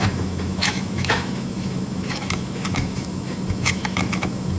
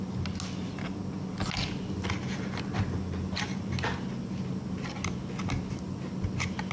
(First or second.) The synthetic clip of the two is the first